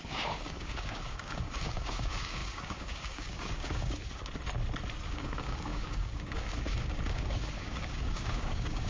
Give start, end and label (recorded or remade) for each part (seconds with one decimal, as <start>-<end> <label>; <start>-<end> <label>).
0.0-4.0 remade; 4.0-5.1 recorded; 5.1-8.9 remade